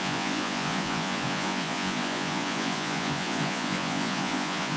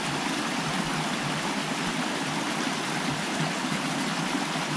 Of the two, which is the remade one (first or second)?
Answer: first